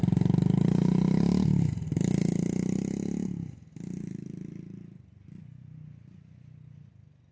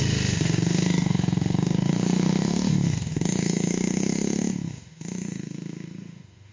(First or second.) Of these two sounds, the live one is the first